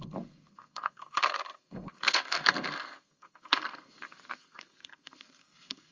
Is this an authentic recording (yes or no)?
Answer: no